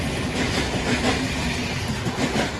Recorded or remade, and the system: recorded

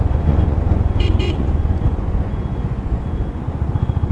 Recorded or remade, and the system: remade, vocoder, Vocos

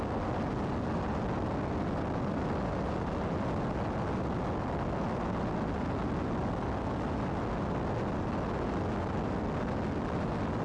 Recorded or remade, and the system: recorded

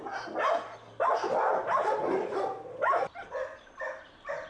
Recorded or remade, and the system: recorded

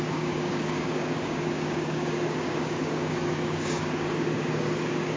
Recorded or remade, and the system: remade, codec, DAC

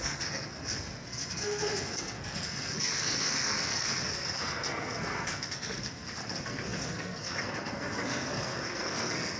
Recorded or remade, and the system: remade, codec, SNAC